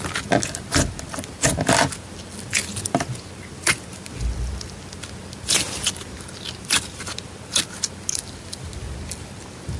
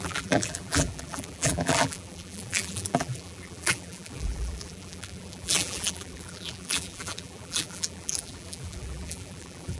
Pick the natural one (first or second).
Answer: first